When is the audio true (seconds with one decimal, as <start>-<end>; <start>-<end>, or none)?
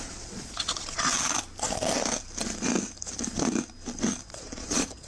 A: 1.1-4.2